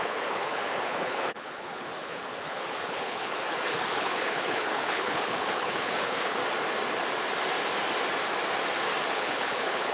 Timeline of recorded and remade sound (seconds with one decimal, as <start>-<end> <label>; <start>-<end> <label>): 0.0-6.4 remade; 6.4-9.1 recorded; 9.1-9.9 remade